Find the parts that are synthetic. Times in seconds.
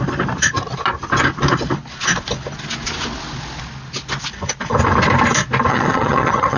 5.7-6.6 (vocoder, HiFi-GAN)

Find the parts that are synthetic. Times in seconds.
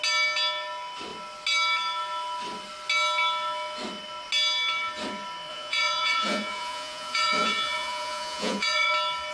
5.5-8.9 (vocoder, Vocos)